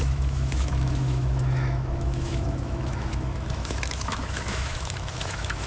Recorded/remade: remade